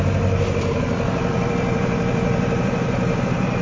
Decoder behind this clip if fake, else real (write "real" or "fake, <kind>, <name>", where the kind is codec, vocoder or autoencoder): fake, vocoder, BigVGAN v2